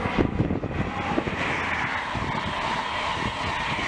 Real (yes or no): yes